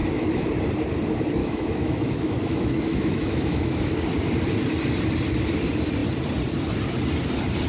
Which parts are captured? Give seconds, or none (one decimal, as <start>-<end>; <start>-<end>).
0.5-1.4; 3.8-7.7